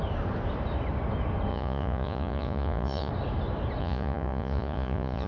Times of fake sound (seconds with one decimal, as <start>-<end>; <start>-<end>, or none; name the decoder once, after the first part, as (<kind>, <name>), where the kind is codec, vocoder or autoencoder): 1.5-3.1 (vocoder, Vocos); 3.8-5.3